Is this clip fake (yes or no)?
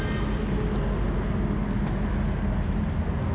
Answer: no